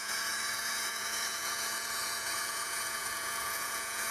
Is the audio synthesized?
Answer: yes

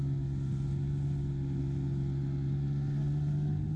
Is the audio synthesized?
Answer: no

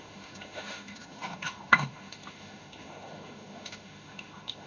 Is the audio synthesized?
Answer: yes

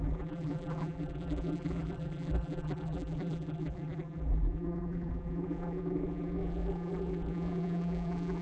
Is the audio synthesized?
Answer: yes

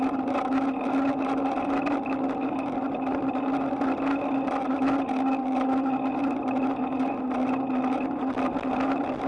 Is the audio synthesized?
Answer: no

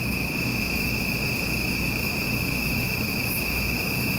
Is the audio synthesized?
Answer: yes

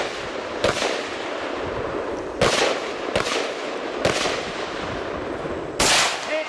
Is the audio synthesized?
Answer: no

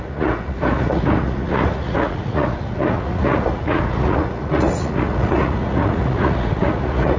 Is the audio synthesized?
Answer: yes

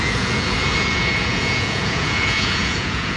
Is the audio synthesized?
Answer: yes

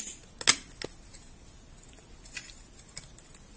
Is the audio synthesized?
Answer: no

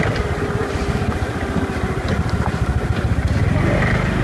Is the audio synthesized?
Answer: no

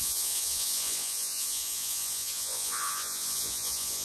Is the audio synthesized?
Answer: yes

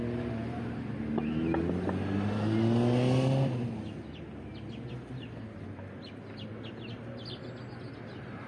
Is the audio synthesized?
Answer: no